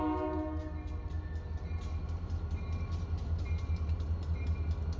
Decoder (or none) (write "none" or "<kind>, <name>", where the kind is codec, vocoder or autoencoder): none